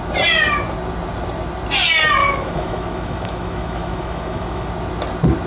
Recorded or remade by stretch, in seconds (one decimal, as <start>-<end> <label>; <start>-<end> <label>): 0.0-2.2 recorded; 2.2-4.7 remade; 4.7-5.5 recorded